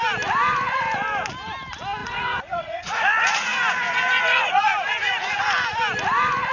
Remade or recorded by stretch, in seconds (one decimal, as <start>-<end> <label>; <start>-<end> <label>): 0.0-2.0 recorded; 2.0-3.0 remade; 3.0-4.3 recorded; 4.3-5.4 remade; 5.4-6.5 recorded